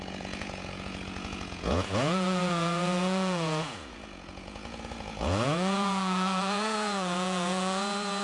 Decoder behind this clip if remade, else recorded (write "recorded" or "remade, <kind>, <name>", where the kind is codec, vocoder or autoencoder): remade, vocoder, Vocos